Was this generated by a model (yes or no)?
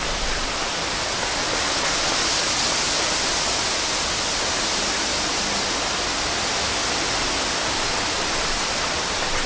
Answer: no